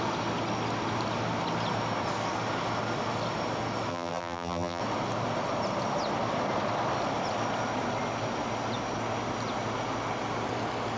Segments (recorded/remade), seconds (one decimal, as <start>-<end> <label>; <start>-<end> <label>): 0.0-3.9 recorded; 3.9-4.8 remade; 4.8-11.0 recorded